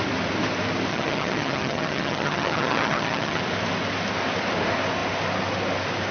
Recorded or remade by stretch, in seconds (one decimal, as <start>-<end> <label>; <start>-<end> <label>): 0.0-0.9 recorded; 0.9-3.4 remade; 3.4-6.1 recorded